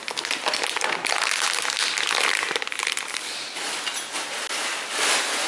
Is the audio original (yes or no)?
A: yes